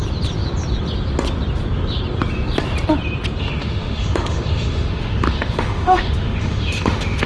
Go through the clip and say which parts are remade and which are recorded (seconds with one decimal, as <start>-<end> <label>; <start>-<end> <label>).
0.0-3.4 recorded; 3.4-7.3 remade